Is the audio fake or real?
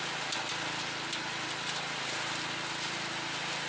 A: real